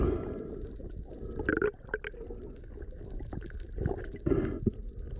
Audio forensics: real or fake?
real